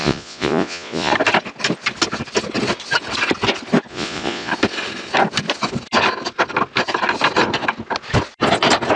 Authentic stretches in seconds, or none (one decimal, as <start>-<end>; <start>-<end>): 1.1-3.9; 4.5-9.0